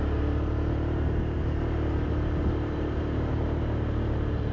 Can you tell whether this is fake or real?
real